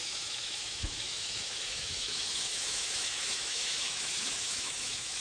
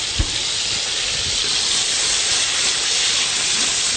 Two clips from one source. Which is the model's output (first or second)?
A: first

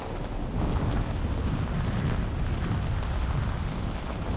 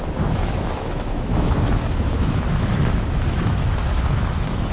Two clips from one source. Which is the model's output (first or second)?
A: second